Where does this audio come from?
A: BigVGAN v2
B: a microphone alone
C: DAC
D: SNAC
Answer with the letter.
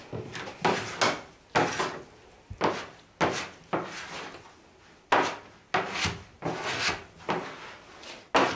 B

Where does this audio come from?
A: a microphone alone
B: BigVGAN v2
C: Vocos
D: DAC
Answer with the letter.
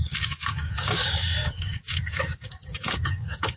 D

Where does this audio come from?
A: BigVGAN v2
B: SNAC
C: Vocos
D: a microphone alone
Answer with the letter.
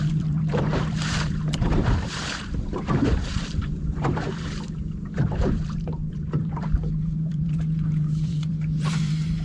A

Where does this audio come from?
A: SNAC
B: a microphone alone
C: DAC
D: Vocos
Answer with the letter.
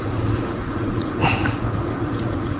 D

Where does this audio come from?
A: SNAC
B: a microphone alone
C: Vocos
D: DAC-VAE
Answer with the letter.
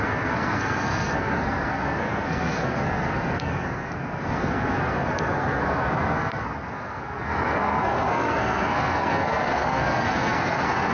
A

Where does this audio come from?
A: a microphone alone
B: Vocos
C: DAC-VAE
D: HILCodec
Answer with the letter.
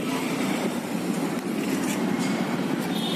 A